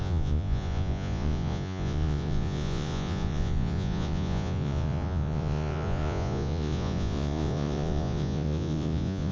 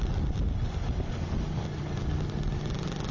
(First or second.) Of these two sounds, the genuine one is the second